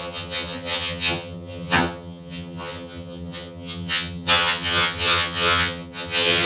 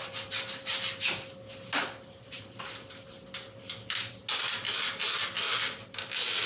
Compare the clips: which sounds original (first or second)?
second